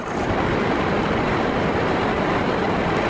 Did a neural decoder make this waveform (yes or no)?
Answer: no